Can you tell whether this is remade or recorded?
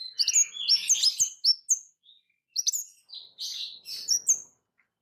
recorded